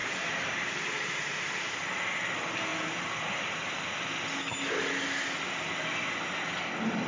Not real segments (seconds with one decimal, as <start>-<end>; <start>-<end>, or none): 0.0-1.2; 2.7-3.2

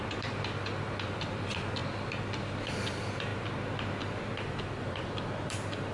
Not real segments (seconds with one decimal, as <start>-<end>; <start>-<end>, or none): 0.0-1.8; 2.7-5.9

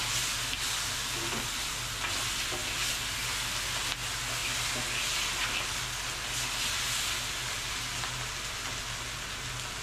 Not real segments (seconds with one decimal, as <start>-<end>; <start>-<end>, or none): none

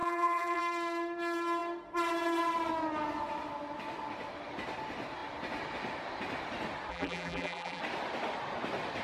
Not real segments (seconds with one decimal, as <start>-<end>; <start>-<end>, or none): 0.0-0.6; 6.9-7.8

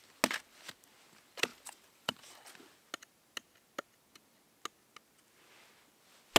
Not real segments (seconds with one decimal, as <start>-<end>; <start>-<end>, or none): 1.5-2.2

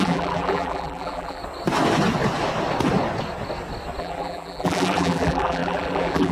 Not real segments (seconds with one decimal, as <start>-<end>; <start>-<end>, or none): 0.0-1.4; 4.0-6.3

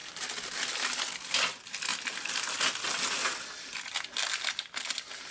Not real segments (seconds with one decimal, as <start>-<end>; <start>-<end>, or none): none

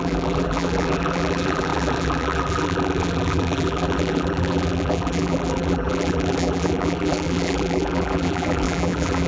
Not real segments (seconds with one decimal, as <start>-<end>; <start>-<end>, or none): 0.0-9.3